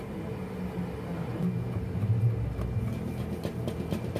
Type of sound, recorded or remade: recorded